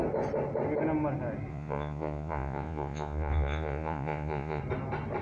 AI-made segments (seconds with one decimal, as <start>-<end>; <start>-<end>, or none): 1.5-4.6